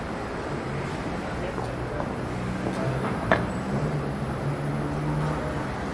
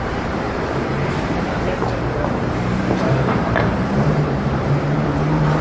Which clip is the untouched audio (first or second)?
first